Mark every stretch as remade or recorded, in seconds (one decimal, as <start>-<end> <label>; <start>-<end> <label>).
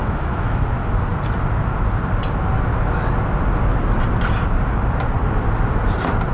0.0-0.6 remade; 0.6-6.3 recorded